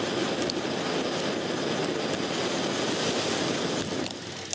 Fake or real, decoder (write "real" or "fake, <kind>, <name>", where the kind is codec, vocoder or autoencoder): real